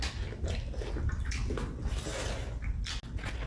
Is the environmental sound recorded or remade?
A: recorded